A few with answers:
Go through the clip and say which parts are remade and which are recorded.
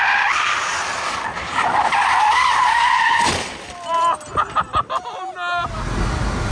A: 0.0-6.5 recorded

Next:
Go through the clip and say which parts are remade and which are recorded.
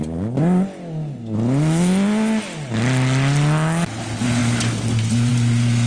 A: 0.0-5.9 recorded